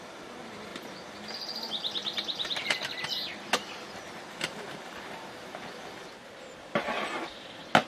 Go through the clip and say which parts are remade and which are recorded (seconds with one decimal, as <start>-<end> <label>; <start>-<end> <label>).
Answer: 0.0-7.9 recorded